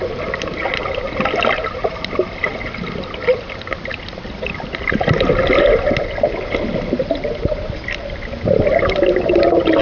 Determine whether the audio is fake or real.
real